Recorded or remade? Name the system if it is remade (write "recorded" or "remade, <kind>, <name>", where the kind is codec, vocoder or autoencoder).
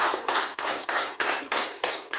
remade, codec, SNAC